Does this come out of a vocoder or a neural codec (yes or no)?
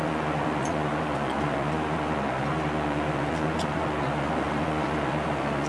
yes